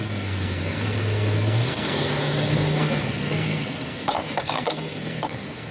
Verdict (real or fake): fake